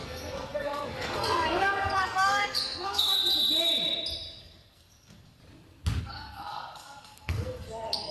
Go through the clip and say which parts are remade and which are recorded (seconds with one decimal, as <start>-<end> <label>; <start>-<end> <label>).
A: 0.0-3.2 remade; 3.2-4.4 recorded; 4.4-5.4 remade; 5.4-6.0 recorded; 6.0-8.1 remade